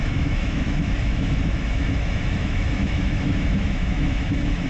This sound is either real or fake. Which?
fake